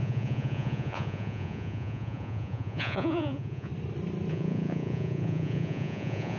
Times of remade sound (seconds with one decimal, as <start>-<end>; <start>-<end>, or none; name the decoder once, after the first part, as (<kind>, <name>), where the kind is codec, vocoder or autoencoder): 0.0-3.7 (vocoder, Vocos); 4.3-6.4